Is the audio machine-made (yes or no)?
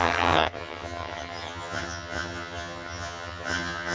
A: yes